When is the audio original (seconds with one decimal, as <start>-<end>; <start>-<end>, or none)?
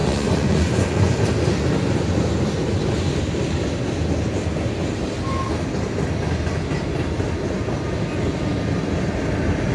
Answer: 1.2-9.7